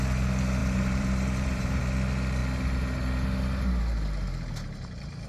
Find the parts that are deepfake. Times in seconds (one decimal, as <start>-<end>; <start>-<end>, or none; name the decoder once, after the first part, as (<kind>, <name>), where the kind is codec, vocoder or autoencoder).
0.6-1.8 (vocoder, BigVGAN v2)

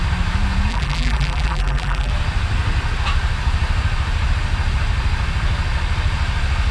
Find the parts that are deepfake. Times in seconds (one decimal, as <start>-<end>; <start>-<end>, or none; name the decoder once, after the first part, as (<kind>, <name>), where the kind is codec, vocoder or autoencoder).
0.7-2.1 (vocoder, BigVGAN v2)

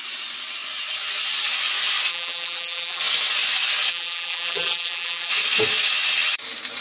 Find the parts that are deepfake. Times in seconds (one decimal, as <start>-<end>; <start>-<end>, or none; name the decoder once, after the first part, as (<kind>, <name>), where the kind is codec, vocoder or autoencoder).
2.1-3.0 (vocoder, BigVGAN v2); 3.9-5.3

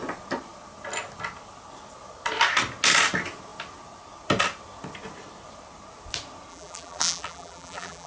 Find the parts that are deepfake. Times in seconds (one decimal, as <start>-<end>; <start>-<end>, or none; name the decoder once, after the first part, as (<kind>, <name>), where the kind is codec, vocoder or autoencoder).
6.5-8.1 (vocoder, BigVGAN v2)